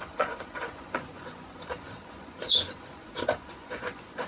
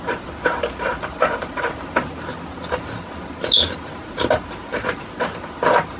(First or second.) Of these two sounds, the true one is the second